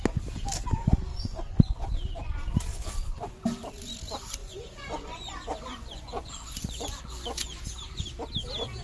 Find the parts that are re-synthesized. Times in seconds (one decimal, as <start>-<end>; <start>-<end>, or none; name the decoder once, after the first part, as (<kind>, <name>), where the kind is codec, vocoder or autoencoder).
1.1-1.9 (vocoder, Vocos); 2.7-3.4; 4.4-7.6